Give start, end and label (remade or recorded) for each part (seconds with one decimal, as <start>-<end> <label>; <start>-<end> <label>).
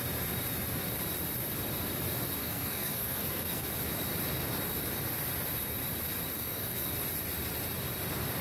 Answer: 0.0-2.4 recorded; 2.4-3.7 remade; 3.7-6.3 recorded; 6.3-6.9 remade; 6.9-8.4 recorded